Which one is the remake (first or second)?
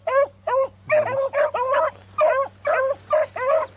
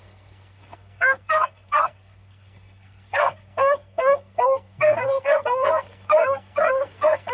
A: second